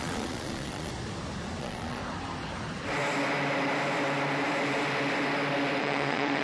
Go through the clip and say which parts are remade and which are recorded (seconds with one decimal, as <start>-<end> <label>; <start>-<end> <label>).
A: 0.0-0.9 remade; 0.9-1.6 recorded; 1.6-2.0 remade; 2.0-5.8 recorded; 5.8-6.4 remade